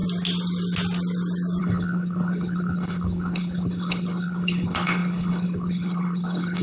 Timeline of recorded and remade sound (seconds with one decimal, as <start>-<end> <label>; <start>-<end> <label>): 0.0-1.6 recorded; 1.6-6.6 remade